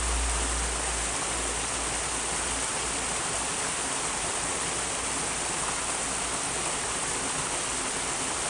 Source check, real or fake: real